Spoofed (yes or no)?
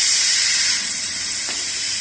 yes